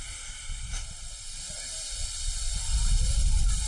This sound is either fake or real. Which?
real